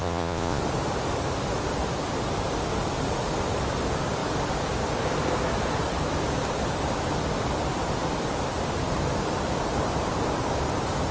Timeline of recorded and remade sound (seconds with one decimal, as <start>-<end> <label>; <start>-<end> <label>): 0.0-0.6 remade; 0.6-11.1 recorded